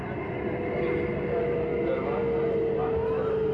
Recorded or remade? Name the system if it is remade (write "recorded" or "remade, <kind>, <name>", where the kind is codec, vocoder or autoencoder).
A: recorded